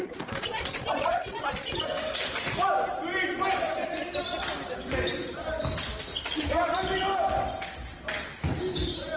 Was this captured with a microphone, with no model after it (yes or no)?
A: yes